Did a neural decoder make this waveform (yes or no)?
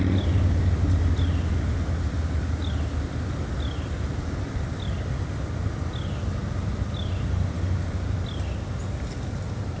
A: no